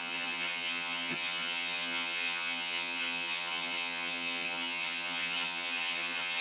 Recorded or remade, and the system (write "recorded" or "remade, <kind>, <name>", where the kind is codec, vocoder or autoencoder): remade, vocoder, HiFi-GAN